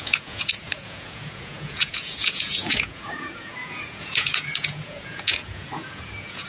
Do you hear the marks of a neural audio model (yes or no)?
yes